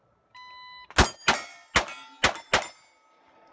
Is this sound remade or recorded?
recorded